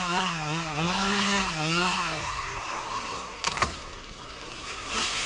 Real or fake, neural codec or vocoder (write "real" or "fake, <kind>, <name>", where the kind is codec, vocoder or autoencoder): fake, codec, SNAC